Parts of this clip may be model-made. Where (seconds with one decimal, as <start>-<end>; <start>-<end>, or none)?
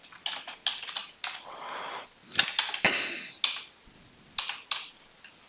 none